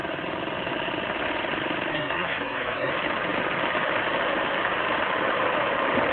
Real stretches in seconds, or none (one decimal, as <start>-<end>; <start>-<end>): 0.0-1.9; 2.9-6.1